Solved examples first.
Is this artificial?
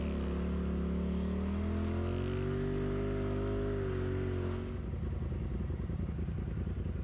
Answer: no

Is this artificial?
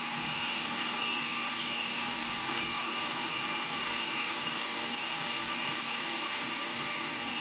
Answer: yes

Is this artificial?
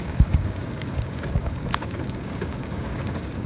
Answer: yes